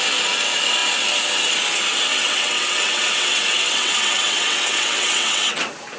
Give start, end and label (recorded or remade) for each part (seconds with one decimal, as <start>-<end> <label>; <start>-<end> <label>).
0.0-2.1 recorded; 2.1-5.6 remade; 5.6-6.0 recorded